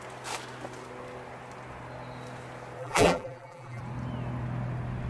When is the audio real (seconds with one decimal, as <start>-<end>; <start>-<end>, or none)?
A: 0.0-2.8; 3.8-5.1